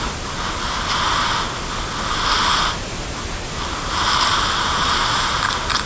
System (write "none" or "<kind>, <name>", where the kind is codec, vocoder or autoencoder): none